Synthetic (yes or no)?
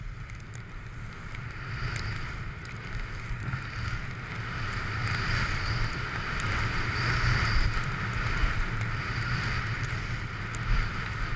no